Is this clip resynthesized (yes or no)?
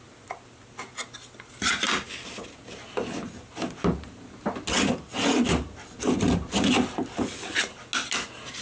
no